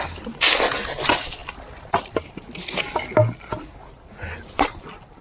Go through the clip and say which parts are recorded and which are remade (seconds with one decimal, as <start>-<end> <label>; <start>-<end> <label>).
0.0-5.2 recorded

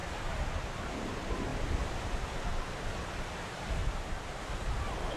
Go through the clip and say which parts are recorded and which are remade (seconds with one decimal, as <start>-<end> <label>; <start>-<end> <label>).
0.0-1.5 remade; 1.5-2.1 recorded; 2.1-3.8 remade; 3.8-4.4 recorded; 4.4-5.2 remade

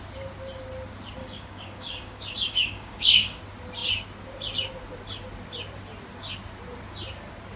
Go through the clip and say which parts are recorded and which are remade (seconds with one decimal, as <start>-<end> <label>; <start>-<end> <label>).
0.0-1.2 recorded; 1.2-3.4 remade; 3.4-7.6 recorded

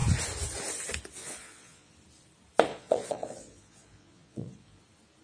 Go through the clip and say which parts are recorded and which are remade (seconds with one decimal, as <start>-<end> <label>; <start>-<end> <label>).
0.0-1.2 recorded; 1.2-1.9 remade; 1.9-2.7 recorded; 2.7-4.8 remade; 4.8-5.2 recorded